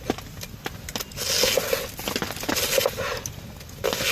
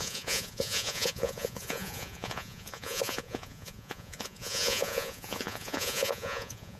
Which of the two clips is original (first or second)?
first